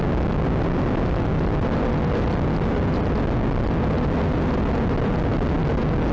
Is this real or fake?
real